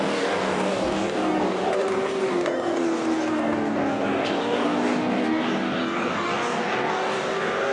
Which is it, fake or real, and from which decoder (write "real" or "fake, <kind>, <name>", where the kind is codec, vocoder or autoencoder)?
fake, codec, DAC